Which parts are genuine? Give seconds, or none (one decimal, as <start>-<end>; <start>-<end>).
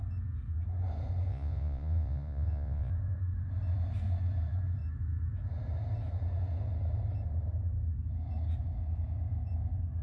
0.0-1.3; 2.9-10.0